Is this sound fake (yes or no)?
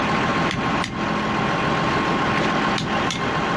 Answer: no